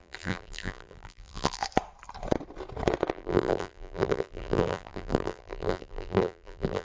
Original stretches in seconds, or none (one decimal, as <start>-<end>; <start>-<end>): 1.6-3.1